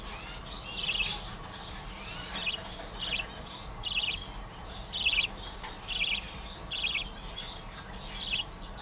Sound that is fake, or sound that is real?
real